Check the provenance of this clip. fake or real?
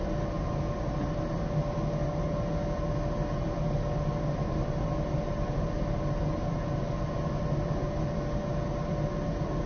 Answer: real